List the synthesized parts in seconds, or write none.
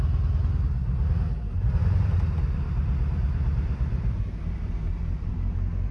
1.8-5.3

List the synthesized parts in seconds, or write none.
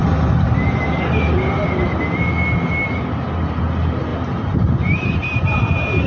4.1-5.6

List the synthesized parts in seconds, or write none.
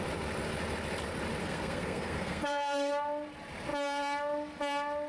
1.4-2.9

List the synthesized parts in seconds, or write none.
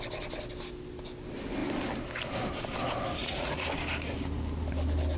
3.2-3.7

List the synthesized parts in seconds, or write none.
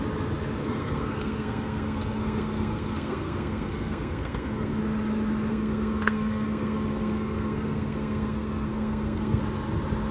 0.6-4.8; 5.5-9.4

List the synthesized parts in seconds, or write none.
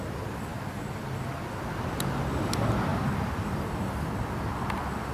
none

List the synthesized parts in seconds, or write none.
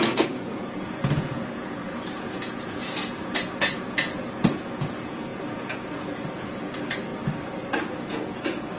0.0-7.1; 7.8-8.8